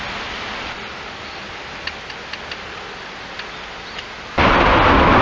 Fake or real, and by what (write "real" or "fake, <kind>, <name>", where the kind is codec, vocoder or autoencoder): real